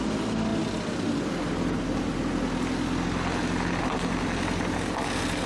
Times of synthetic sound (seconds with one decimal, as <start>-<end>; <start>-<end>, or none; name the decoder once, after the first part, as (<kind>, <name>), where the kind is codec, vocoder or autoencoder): none

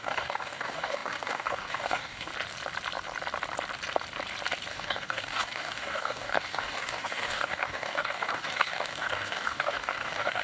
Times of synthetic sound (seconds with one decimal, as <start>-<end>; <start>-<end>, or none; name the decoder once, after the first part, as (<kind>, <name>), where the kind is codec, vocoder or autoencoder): 0.0-2.3 (codec, DAC); 4.7-10.4